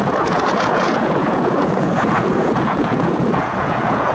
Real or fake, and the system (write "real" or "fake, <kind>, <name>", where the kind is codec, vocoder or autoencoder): fake, vocoder, Vocos